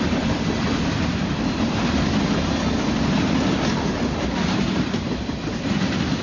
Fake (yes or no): no